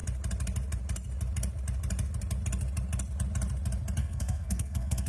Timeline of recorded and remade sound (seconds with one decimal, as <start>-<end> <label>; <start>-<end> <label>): 0.0-4.0 recorded; 4.0-5.1 remade